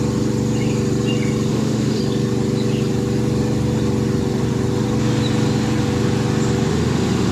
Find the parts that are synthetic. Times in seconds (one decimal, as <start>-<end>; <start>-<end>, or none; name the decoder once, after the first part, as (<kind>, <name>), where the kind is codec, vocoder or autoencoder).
1.5-2.0 (autoencoder, DAC-VAE); 6.7-7.3

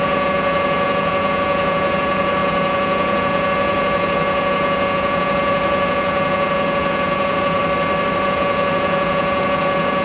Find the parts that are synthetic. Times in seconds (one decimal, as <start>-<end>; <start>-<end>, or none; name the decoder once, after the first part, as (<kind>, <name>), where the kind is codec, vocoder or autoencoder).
0.0-7.6 (vocoder, Vocos); 8.2-10.0

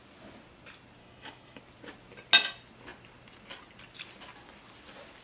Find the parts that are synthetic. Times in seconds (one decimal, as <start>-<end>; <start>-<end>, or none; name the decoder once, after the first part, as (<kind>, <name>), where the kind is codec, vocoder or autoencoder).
1.0-1.6 (autoencoder, DAC-VAE)

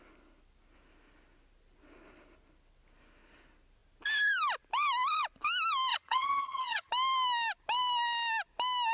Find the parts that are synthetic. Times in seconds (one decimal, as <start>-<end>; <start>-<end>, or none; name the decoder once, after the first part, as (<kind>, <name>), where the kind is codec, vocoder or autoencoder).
5.9-6.9 (vocoder, HiFi-GAN)

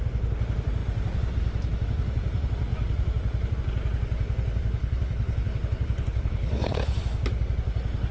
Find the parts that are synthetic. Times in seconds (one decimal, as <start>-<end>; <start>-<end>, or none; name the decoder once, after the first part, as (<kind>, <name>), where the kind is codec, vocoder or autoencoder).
4.8-7.0 (codec, HILCodec)

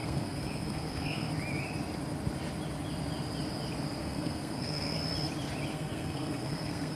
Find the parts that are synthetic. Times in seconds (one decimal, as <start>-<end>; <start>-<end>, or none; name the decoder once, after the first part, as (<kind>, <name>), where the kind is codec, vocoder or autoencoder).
0.0-1.3 (codec, SNAC); 4.0-5.0; 5.7-7.0

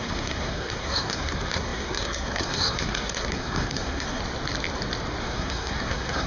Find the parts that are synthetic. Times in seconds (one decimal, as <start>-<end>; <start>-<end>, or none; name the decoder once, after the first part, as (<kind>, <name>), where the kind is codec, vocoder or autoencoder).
0.0-4.2 (codec, SNAC); 5.2-6.3

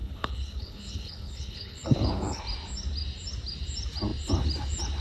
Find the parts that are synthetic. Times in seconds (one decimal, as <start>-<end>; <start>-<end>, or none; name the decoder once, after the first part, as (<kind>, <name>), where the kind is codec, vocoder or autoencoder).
0.0-2.4 (codec, HILCodec)